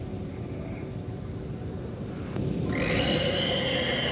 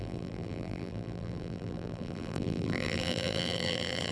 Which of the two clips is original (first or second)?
first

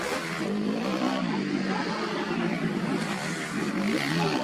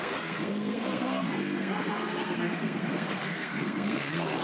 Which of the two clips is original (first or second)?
first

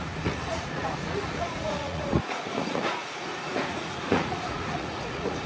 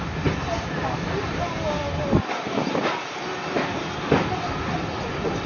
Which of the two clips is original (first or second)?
second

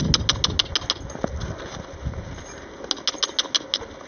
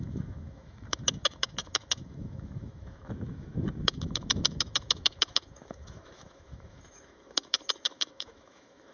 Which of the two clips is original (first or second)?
first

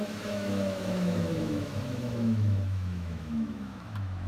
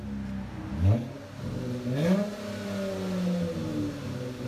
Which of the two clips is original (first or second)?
second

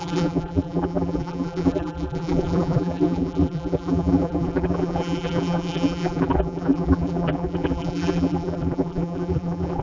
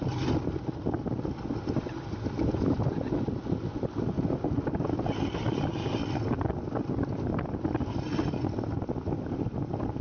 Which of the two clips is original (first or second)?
second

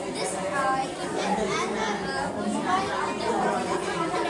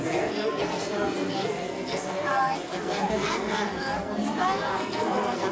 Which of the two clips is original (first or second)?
first